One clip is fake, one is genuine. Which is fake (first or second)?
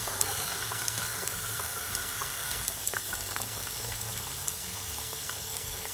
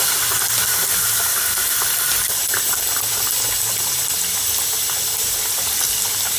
first